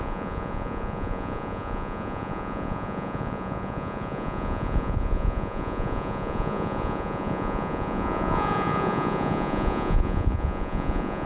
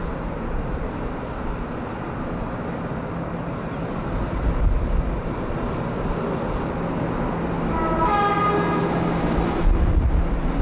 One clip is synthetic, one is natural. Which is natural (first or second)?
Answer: second